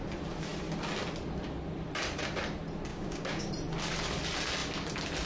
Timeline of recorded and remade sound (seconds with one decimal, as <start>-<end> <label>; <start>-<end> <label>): 0.0-2.9 recorded; 2.9-3.5 remade; 3.5-5.3 recorded